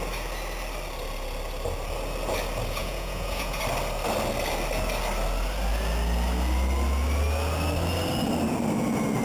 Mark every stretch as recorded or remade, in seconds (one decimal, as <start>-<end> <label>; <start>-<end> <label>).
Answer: 0.0-2.8 recorded; 2.8-3.6 remade; 3.6-9.2 recorded